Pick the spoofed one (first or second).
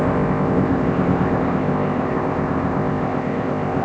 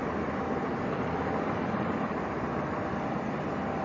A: first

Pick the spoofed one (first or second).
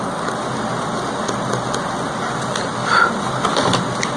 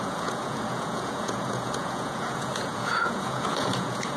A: second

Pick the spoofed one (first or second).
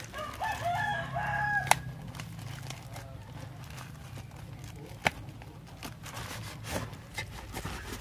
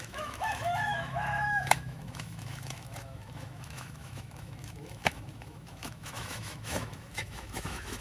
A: second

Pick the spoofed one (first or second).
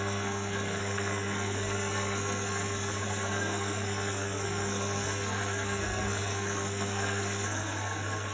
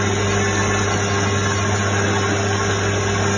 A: first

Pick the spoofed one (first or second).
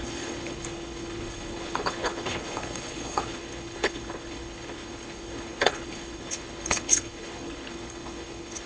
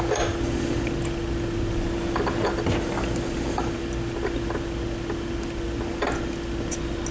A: first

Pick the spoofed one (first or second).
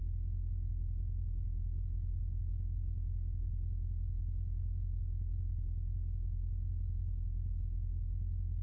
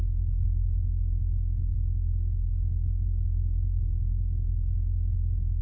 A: second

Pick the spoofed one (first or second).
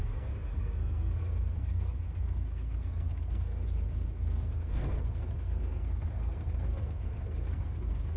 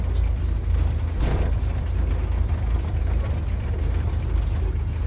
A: first